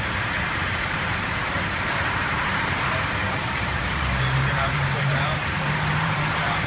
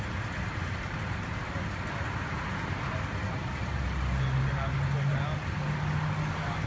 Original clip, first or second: second